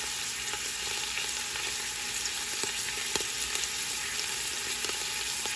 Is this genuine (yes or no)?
yes